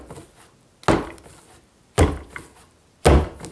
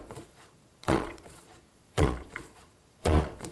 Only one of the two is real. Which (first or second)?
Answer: first